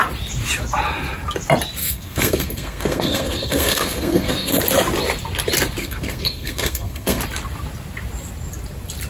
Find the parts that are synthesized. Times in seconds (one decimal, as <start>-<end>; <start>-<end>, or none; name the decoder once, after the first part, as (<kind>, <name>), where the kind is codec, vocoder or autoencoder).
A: 1.8-4.6 (codec, SNAC); 5.8-7.2